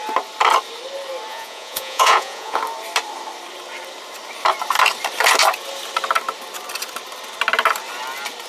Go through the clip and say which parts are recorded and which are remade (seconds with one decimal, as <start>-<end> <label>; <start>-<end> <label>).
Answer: 0.0-1.3 recorded; 1.3-2.6 remade; 2.6-8.5 recorded